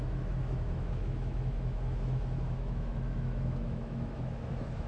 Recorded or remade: remade